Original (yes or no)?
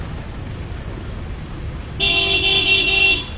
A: yes